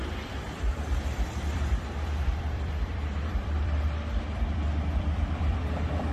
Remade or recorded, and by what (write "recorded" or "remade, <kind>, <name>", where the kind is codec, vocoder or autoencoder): remade, vocoder, BigVGAN v2